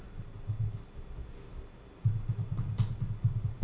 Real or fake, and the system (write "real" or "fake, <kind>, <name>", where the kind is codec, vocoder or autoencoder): real